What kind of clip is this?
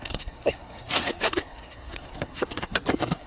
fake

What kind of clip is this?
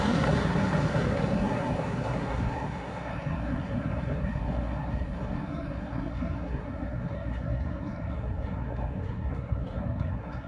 fake